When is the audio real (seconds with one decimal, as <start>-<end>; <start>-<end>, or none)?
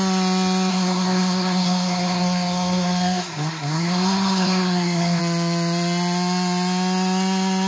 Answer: 0.0-0.7; 5.2-7.7